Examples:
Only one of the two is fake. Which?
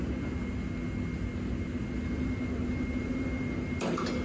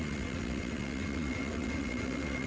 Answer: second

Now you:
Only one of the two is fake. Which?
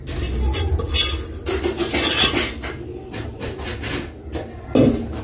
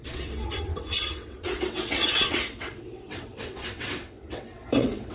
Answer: second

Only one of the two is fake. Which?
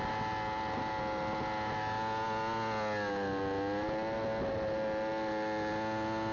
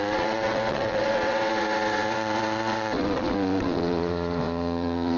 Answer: second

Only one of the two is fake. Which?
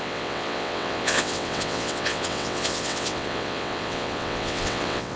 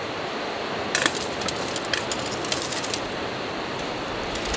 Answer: first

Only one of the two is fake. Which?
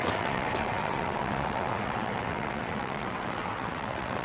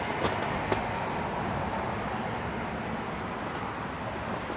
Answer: first